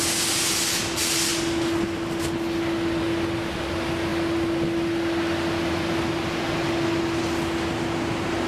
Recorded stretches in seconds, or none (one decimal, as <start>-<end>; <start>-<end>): 0.0-8.5

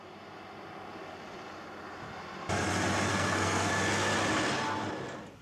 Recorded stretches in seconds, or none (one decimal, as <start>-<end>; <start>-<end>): 0.0-3.1; 3.7-5.4